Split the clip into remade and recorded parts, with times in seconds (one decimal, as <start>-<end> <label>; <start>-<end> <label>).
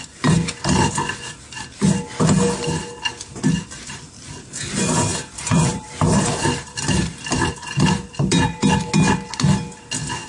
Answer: 0.0-5.1 recorded; 5.1-8.9 remade; 8.9-10.3 recorded